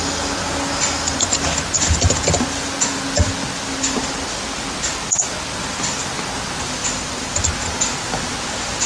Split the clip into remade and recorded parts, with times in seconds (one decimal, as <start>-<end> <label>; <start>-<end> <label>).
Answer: 0.0-6.8 recorded; 6.8-7.4 remade; 7.4-8.9 recorded